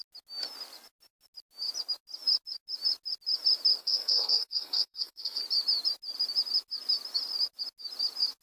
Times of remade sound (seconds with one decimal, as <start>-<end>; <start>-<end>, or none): 3.8-5.4